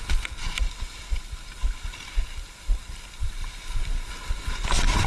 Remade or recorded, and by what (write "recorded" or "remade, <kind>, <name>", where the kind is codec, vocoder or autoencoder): recorded